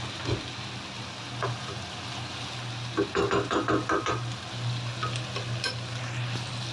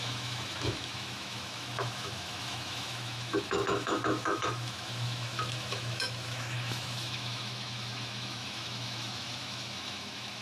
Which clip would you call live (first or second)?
first